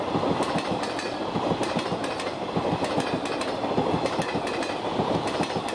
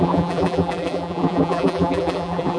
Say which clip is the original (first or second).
first